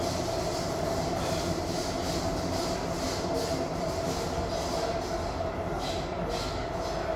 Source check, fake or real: real